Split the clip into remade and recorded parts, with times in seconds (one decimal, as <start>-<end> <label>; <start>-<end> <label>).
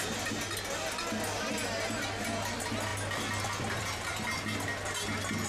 0.0-2.9 recorded; 2.9-3.8 remade; 3.8-5.5 recorded